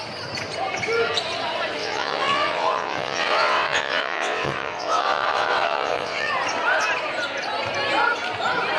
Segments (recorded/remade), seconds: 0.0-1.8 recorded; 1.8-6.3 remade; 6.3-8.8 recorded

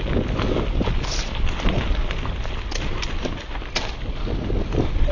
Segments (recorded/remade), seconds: 0.0-5.1 recorded

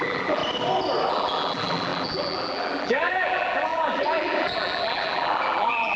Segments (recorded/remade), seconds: 0.0-0.4 remade; 0.4-1.1 recorded; 1.1-6.0 remade

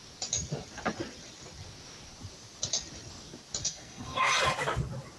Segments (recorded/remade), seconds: 0.0-3.6 recorded; 3.6-4.3 remade; 4.3-5.2 recorded

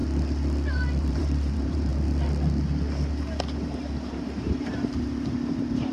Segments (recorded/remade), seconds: 0.0-1.0 recorded; 1.0-1.9 remade; 1.9-4.1 recorded; 4.1-4.7 remade; 4.7-5.5 recorded; 5.5-5.9 remade

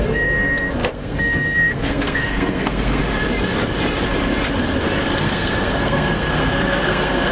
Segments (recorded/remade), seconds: 0.0-3.0 remade; 3.0-5.2 recorded; 5.2-7.3 remade

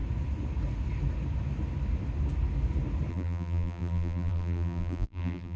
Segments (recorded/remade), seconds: 0.0-3.1 recorded; 3.1-5.6 remade